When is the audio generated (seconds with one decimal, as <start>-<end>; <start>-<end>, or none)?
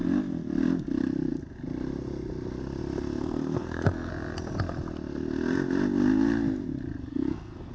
3.2-4.1; 7.1-7.7